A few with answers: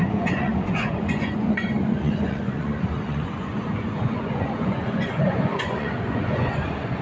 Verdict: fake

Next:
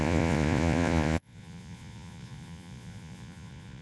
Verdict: fake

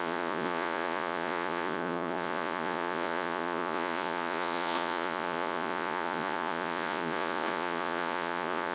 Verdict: fake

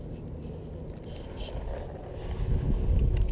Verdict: real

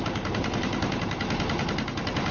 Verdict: real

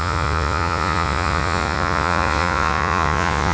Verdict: fake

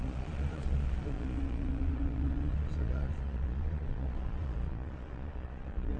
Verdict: fake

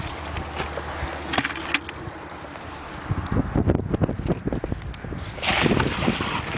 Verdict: real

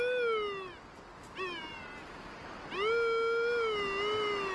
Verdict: real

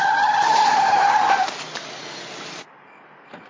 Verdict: real